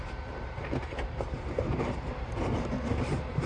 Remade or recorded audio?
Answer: remade